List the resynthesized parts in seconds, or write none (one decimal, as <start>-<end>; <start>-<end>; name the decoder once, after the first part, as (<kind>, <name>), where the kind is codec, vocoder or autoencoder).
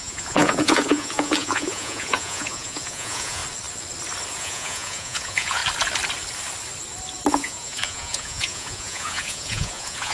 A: 0.0-3.4 (vocoder, Vocos); 4.4-5.6; 7.3-10.1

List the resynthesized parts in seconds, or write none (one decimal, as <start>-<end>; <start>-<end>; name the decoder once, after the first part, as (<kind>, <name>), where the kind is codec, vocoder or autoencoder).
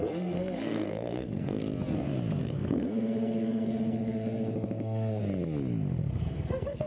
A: 0.0-1.6 (codec, SNAC); 2.4-5.2; 6.0-6.9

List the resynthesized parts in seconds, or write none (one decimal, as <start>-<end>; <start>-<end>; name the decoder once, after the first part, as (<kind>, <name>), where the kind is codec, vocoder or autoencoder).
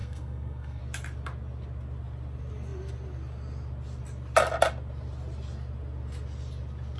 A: 0.0-0.8 (codec, SNAC)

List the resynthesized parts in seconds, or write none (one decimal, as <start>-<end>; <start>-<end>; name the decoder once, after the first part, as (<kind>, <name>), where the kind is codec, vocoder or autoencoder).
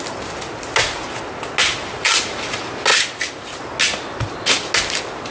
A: none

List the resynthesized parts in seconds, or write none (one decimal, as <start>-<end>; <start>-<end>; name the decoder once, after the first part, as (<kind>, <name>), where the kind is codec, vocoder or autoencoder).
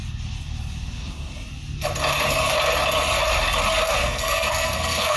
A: 4.0-5.2 (codec, SNAC)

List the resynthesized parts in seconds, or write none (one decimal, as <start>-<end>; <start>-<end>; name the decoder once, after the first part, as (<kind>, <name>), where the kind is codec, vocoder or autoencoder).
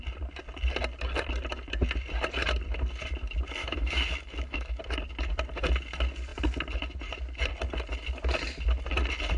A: 3.6-4.8 (autoencoder, DAC-VAE)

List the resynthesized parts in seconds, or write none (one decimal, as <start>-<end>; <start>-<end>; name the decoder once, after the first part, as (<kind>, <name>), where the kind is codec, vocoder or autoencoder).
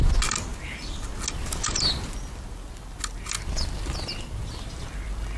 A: 0.5-1.1 (vocoder, BigVGAN v2)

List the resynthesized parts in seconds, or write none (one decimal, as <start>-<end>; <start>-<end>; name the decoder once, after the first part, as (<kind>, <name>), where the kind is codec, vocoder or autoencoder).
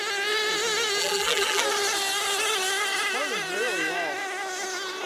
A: 1.0-1.6 (vocoder, BigVGAN v2)